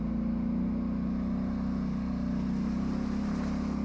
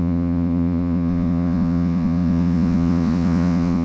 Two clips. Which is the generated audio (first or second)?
second